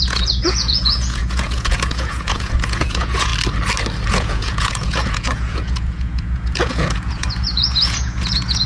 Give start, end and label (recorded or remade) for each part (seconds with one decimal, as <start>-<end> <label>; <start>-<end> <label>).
0.0-3.3 remade; 3.3-4.1 recorded; 4.1-8.7 remade